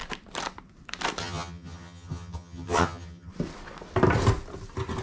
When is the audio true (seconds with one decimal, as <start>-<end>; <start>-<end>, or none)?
0.0-1.2; 3.3-5.0